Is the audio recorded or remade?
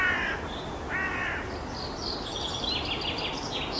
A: recorded